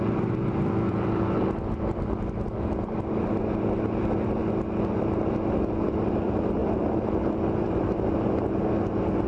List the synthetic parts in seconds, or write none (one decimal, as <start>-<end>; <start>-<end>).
0.0-4.4; 5.0-9.3